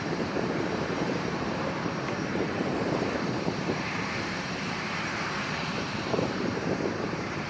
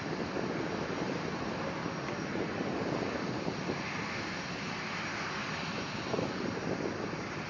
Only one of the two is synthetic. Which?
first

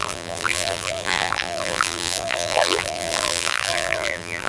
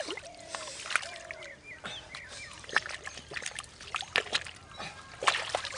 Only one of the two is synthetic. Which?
first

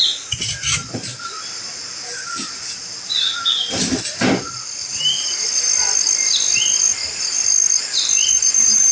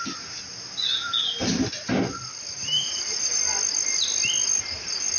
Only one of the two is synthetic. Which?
first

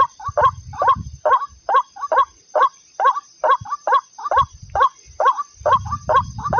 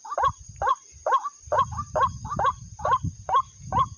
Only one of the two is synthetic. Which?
second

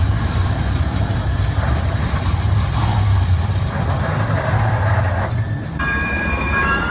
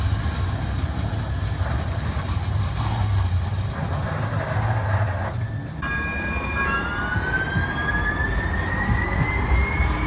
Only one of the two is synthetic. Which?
first